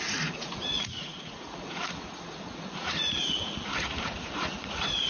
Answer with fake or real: fake